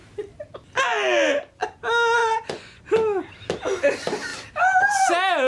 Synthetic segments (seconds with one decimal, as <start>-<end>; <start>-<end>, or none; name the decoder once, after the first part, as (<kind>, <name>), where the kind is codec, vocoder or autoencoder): 2.2-2.8 (vocoder, Vocos)